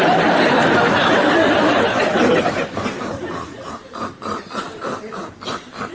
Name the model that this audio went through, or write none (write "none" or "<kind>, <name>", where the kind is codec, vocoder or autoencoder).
vocoder, BigVGAN v2